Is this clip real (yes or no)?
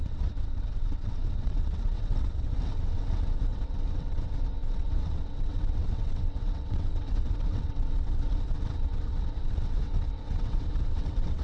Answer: no